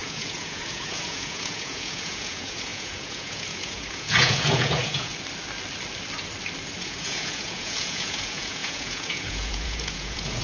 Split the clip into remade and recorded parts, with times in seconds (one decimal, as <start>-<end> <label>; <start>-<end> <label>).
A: 0.0-5.1 remade; 5.1-6.8 recorded; 6.8-10.4 remade